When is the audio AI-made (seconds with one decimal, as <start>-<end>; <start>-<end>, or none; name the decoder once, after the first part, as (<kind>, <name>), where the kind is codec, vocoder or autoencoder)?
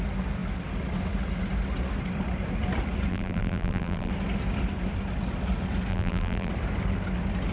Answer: 3.1-4.1 (vocoder, BigVGAN v2); 5.9-6.5